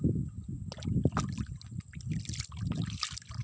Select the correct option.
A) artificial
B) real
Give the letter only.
B